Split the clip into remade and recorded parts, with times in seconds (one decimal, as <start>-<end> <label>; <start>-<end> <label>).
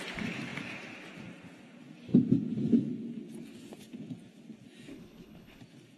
0.0-4.9 recorded; 4.9-5.6 remade; 5.6-6.0 recorded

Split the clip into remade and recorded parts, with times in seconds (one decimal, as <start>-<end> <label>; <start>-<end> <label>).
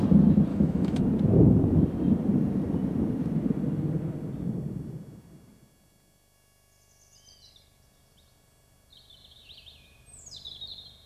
0.0-0.5 recorded; 0.5-1.0 remade; 1.0-11.1 recorded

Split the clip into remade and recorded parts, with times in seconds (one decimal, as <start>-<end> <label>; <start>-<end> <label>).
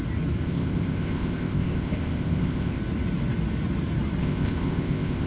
0.0-0.4 recorded; 0.4-2.8 remade; 2.8-4.2 recorded; 4.2-5.3 remade